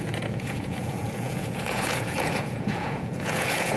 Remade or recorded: remade